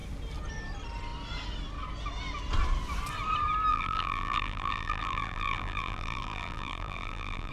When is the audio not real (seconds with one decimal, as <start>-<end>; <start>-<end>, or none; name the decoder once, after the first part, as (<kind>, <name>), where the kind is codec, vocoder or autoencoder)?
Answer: 3.7-7.5 (vocoder, BigVGAN v2)